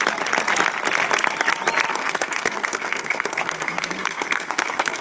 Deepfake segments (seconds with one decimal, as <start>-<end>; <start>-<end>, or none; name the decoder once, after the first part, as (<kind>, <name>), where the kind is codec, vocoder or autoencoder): 1.9-5.0 (codec, SNAC)